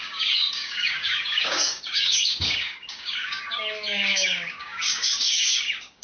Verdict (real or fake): fake